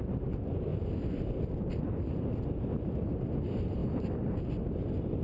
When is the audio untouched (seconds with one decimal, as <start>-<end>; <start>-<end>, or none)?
0.0-3.8; 4.4-5.2